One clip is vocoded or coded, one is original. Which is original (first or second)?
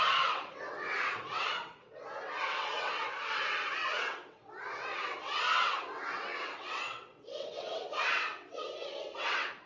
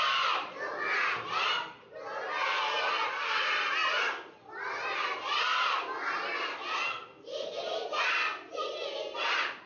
second